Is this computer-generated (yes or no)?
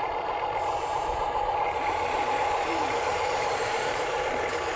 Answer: yes